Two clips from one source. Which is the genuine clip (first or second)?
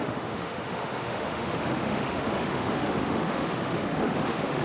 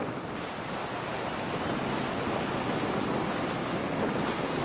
second